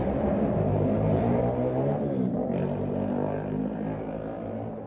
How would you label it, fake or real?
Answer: fake